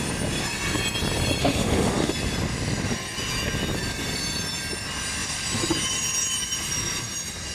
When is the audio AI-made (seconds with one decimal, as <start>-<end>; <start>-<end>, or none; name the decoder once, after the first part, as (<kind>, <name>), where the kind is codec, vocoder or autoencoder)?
1.4-2.1 (autoencoder, DAC-VAE)